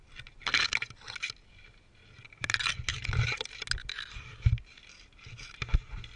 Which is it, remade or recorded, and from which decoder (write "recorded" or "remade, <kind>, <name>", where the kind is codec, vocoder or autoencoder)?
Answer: recorded